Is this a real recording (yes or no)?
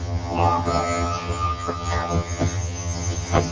no